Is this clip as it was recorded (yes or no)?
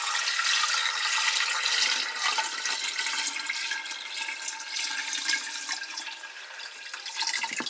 yes